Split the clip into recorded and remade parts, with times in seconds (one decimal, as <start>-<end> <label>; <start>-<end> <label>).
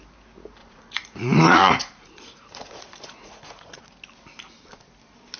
0.0-0.6 recorded; 0.6-3.8 remade; 3.8-5.4 recorded